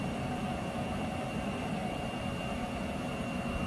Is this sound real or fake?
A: real